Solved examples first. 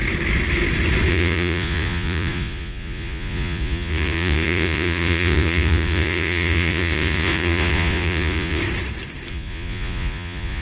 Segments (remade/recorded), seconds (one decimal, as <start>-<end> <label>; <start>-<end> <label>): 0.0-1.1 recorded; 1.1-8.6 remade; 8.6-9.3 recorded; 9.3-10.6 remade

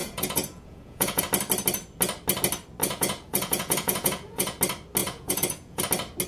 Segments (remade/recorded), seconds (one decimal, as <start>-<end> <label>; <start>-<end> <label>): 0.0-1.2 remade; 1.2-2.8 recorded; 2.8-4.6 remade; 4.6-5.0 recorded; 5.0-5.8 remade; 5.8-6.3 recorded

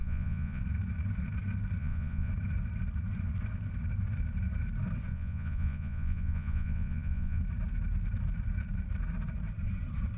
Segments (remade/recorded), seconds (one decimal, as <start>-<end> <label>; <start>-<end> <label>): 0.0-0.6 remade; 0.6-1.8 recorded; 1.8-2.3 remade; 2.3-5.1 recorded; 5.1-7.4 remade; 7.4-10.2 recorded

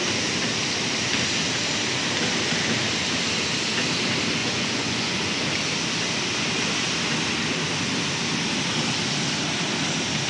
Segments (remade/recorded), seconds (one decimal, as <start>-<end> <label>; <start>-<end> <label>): 0.0-4.4 recorded; 4.4-5.4 remade; 5.4-10.3 recorded